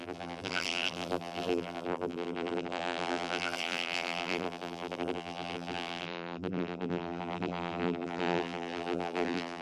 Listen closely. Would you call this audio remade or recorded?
remade